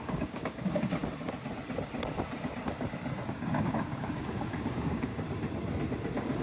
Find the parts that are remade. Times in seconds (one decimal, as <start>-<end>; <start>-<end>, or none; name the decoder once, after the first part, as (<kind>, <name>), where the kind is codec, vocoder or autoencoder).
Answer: 0.0-1.0 (codec, DAC); 3.3-5.1